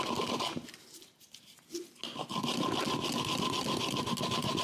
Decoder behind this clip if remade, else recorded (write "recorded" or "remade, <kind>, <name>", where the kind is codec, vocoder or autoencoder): recorded